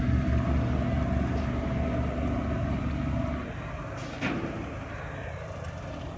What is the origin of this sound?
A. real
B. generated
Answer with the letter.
A